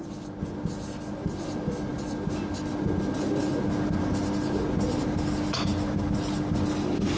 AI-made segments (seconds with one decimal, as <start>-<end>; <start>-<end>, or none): none